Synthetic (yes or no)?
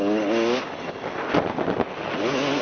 no